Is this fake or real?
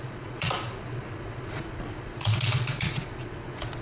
fake